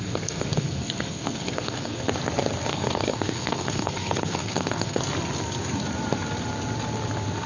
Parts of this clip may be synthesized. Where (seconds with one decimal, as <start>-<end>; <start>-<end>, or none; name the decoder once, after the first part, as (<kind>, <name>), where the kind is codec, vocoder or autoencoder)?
0.0-2.1 (codec, SNAC); 2.7-5.0